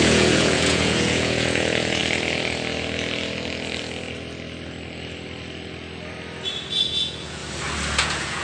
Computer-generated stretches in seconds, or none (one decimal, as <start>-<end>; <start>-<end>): 0.0-2.0; 6.7-7.4; 8.0-8.4